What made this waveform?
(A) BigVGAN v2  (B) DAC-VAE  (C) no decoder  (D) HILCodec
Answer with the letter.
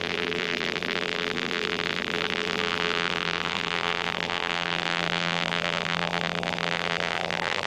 A